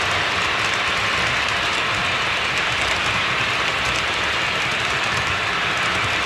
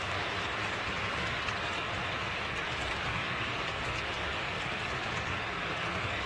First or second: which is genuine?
first